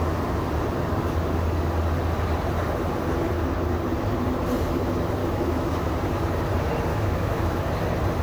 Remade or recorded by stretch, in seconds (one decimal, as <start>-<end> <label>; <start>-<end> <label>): 0.0-5.2 recorded; 5.2-5.9 remade; 5.9-6.9 recorded; 6.9-7.6 remade; 7.6-8.2 recorded